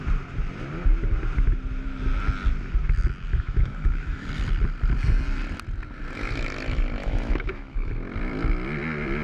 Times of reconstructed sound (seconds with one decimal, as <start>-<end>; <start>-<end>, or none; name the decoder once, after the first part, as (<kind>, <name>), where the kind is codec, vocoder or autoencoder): 3.3-4.3 (autoencoder, DAC-VAE); 7.0-7.9